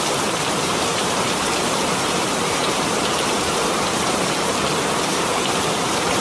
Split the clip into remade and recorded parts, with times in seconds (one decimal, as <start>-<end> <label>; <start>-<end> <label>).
0.0-0.9 recorded; 0.9-3.9 remade; 3.9-5.1 recorded; 5.1-6.2 remade

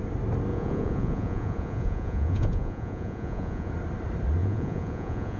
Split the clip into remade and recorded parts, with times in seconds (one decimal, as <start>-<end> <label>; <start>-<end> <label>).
0.0-0.5 recorded; 0.5-3.7 remade; 3.7-4.4 recorded; 4.4-5.4 remade

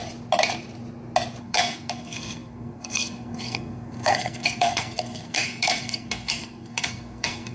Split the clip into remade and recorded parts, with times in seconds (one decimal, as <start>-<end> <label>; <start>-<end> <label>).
0.0-1.4 recorded; 1.4-7.5 remade

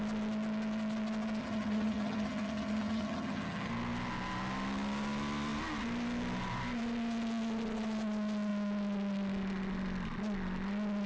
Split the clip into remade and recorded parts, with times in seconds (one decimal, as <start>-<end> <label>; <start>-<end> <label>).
0.0-1.4 recorded; 1.4-3.7 remade; 3.7-11.1 recorded